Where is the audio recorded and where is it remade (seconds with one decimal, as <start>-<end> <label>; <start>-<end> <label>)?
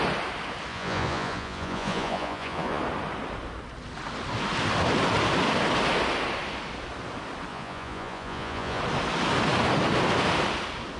0.0-0.7 recorded; 0.7-2.8 remade; 2.8-7.5 recorded; 7.5-8.8 remade; 8.8-11.0 recorded